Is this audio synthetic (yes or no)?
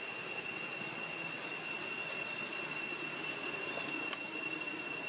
no